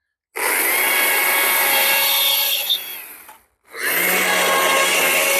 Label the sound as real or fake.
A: real